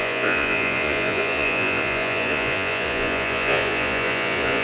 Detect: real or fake fake